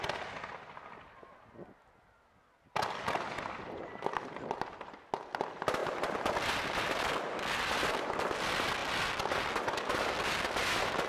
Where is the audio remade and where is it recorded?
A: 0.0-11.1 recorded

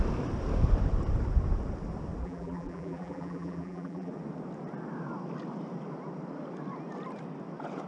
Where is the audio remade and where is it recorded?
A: 0.0-2.2 recorded; 2.2-4.1 remade; 4.1-7.9 recorded

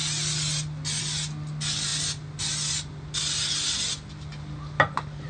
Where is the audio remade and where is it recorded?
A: 0.0-5.3 recorded

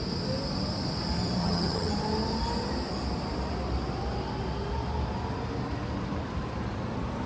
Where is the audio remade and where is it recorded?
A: 0.0-1.4 recorded; 1.4-1.9 remade; 1.9-7.3 recorded

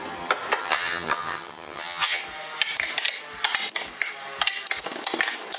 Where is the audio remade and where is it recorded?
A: 0.0-0.6 recorded; 0.6-2.2 remade; 2.2-5.6 recorded

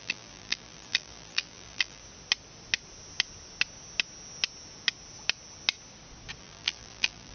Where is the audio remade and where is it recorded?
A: 0.0-2.0 remade; 2.0-6.4 recorded; 6.4-7.3 remade

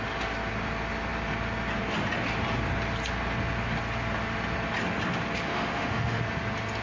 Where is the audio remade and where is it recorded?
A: 0.0-5.5 recorded; 5.5-6.2 remade; 6.2-6.8 recorded